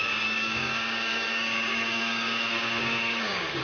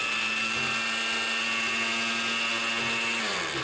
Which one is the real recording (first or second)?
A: second